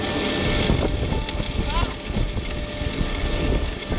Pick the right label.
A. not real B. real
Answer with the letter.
B